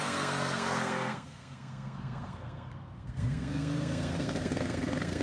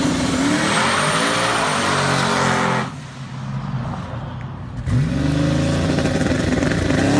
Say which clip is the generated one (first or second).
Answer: first